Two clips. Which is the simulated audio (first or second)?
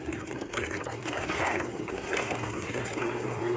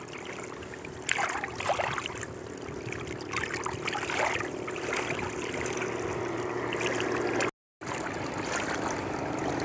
first